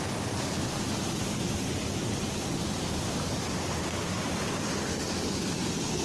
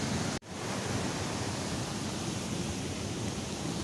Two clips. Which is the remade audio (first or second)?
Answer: second